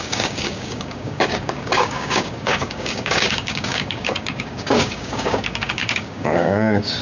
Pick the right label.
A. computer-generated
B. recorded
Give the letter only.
A